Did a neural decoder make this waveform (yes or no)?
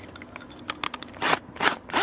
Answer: no